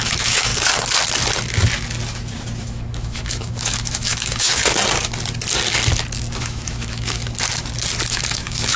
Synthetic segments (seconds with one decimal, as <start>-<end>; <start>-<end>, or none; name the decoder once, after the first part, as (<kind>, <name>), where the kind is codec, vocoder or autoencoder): 0.0-0.5 (autoencoder, DAC-VAE); 2.6-4.6; 6.4-7.2; 8.1-8.8